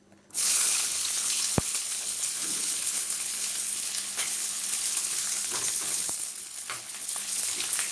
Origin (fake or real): fake